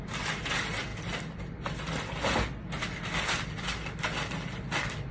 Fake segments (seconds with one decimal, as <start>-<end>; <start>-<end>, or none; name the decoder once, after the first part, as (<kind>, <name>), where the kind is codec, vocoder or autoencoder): none